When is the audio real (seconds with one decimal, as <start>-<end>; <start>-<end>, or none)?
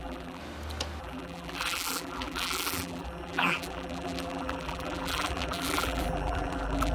0.4-1.0